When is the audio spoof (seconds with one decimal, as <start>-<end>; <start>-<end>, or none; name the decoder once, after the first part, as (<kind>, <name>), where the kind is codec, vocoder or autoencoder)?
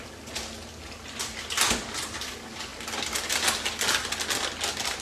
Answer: none